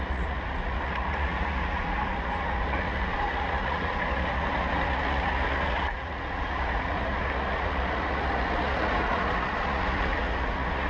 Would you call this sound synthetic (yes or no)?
yes